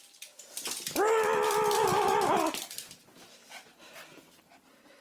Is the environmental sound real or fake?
real